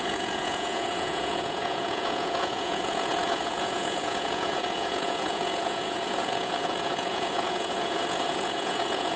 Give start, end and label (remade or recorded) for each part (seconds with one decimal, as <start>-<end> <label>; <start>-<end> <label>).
0.0-9.2 remade